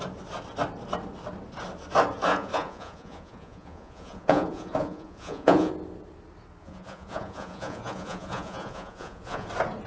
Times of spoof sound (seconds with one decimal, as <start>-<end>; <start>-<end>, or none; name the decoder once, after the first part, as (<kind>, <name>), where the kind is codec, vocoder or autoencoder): 2.3-5.7 (vocoder, Vocos); 6.6-9.5